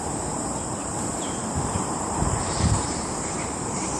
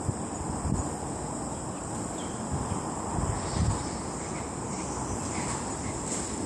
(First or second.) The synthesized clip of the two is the first